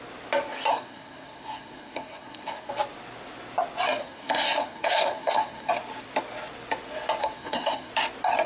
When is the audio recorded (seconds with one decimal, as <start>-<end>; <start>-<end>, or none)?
0.0-0.7; 2.7-4.0; 5.7-7.2; 7.9-8.5